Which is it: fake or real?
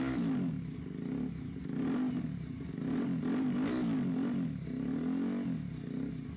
real